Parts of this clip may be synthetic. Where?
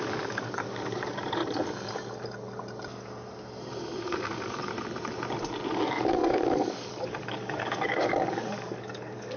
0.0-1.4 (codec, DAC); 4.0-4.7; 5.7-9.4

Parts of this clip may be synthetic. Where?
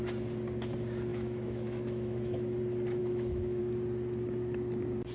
1.1-2.6 (autoencoder, DAC-VAE); 3.0-3.6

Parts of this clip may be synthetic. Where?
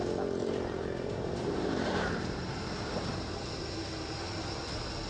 0.4-3.5 (vocoder, BigVGAN v2)